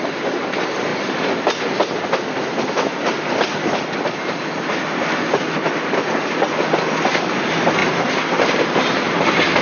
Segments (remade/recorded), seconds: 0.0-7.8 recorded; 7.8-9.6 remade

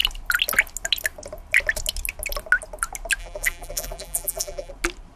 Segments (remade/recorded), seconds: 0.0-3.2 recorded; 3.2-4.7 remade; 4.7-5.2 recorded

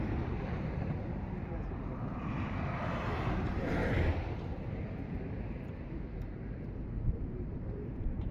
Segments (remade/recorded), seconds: 0.0-3.8 remade; 3.8-4.7 recorded; 4.7-8.3 remade